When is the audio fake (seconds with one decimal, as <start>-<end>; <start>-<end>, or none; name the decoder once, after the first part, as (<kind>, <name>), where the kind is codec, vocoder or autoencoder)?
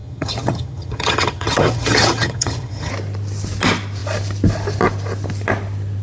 0.0-2.9 (vocoder, HiFi-GAN)